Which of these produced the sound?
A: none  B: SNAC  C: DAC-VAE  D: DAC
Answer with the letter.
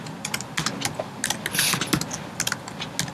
A